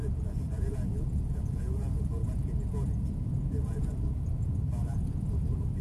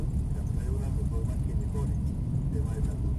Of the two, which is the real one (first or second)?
second